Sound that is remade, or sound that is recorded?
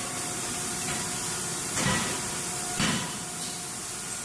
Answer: remade